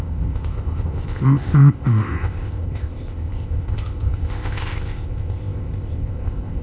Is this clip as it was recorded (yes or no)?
no